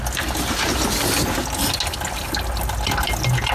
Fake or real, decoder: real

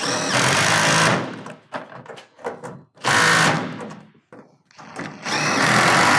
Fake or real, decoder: real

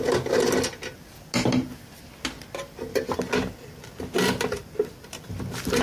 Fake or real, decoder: real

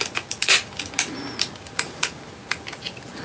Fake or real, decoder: real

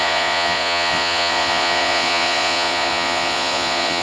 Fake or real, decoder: fake, vocoder, Vocos